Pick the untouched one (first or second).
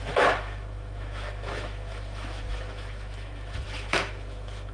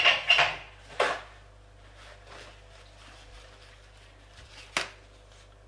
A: second